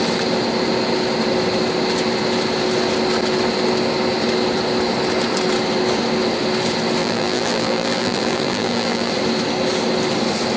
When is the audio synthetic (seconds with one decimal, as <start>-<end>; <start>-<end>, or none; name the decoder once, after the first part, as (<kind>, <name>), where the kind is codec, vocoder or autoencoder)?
7.0-9.1 (vocoder, BigVGAN v2)